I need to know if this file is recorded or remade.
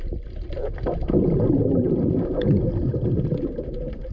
recorded